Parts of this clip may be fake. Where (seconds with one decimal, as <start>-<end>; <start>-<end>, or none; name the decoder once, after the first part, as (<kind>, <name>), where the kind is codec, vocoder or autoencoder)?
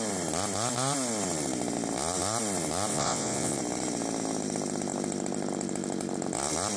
2.9-3.6 (vocoder, WaveNeXt)